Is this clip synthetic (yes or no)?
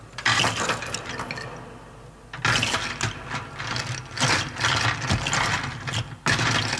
no